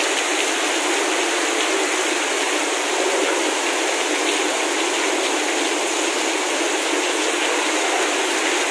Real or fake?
real